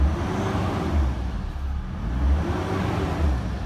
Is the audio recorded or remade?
recorded